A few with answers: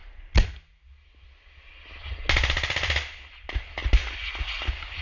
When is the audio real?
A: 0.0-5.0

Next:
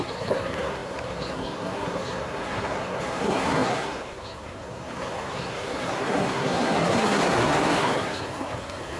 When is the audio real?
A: none

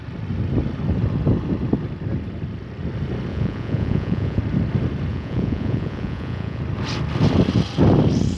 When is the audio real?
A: 0.0-3.3; 4.4-5.1; 6.6-8.4